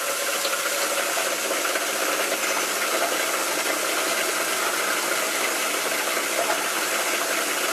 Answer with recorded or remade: recorded